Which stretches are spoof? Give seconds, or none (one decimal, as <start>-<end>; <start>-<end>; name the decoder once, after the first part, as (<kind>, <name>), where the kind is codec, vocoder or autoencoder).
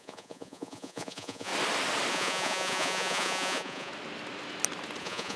0.0-1.5 (vocoder, Vocos); 2.1-3.9; 5.0-5.4